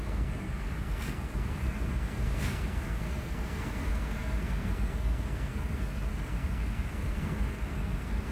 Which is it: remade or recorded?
remade